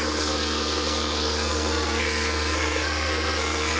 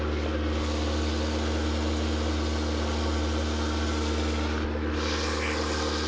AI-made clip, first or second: first